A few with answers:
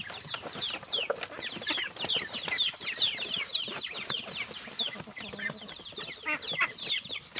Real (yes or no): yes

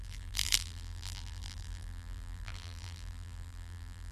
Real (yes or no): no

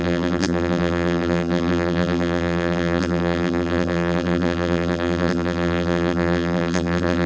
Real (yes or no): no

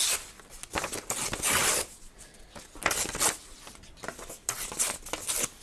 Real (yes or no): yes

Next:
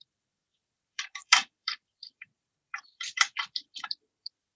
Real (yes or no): no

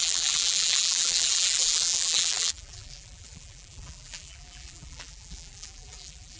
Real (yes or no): no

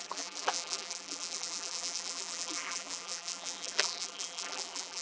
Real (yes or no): no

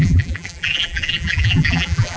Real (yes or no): no